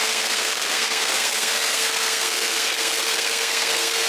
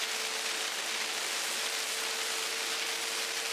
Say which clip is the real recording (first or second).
second